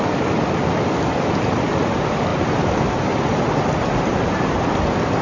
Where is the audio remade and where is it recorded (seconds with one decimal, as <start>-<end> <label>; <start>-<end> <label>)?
0.0-5.2 recorded